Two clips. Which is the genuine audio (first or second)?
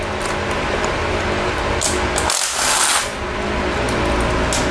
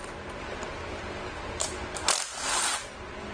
first